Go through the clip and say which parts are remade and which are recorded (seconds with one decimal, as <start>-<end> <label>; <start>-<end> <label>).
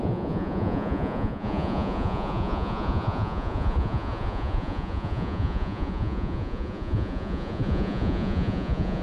0.0-9.0 remade